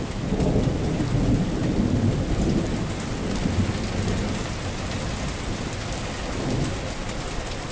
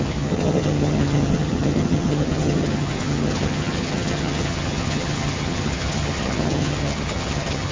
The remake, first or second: second